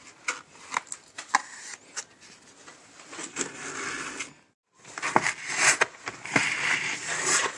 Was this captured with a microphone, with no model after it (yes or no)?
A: yes